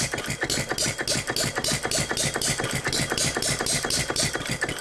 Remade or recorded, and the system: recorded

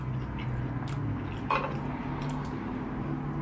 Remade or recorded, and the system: recorded